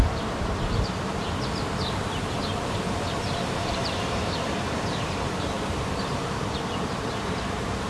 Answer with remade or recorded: remade